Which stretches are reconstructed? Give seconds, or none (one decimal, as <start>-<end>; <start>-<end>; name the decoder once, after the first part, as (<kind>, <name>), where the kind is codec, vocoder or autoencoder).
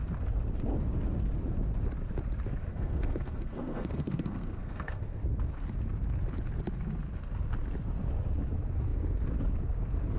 2.7-5.0 (codec, SNAC)